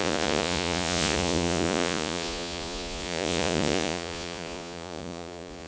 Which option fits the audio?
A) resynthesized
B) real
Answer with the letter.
A